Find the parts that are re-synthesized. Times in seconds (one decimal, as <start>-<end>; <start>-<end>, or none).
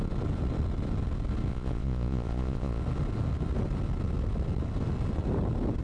1.5-2.8